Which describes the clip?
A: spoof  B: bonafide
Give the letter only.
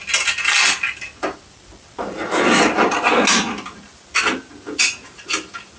B